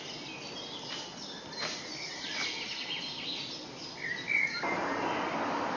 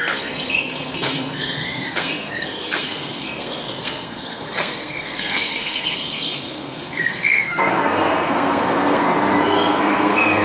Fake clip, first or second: second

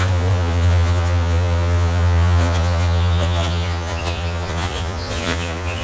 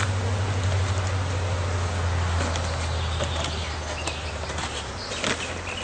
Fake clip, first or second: first